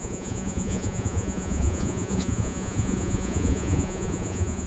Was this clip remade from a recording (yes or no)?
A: yes